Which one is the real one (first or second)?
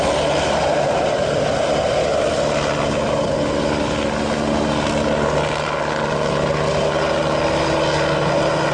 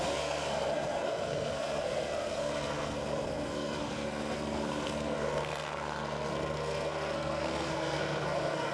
first